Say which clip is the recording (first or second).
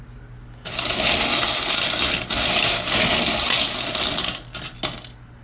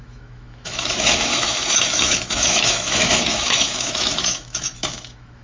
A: first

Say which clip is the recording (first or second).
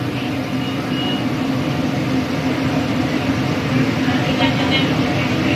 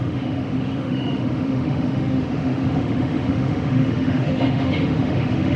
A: first